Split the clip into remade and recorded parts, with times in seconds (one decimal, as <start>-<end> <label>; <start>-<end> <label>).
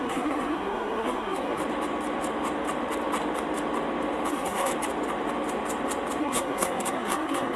0.0-1.6 remade; 1.6-4.3 recorded; 4.3-4.7 remade; 4.7-6.2 recorded; 6.2-7.6 remade